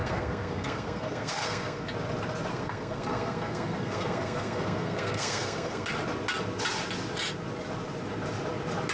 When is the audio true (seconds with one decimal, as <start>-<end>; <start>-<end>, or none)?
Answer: 1.8-2.5; 5.9-8.9